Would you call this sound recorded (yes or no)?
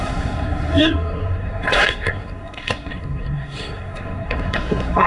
no